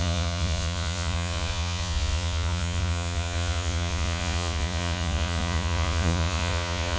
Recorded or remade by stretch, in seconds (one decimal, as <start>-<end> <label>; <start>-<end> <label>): 0.0-7.0 remade